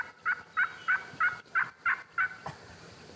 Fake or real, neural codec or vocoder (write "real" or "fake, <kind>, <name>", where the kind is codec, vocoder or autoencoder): real